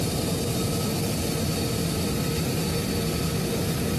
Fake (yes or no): no